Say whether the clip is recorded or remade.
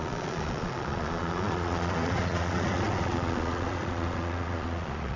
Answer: remade